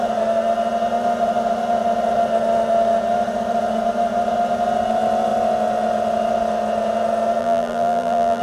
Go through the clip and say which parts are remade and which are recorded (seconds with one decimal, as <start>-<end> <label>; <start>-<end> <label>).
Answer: 0.0-7.4 recorded; 7.4-8.4 remade